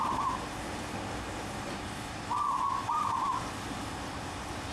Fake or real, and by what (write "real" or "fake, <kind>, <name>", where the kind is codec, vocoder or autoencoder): real